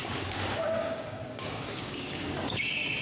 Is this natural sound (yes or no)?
no